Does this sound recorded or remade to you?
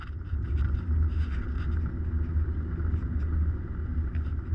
recorded